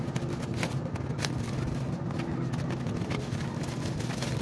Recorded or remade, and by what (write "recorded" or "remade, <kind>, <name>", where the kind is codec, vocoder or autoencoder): recorded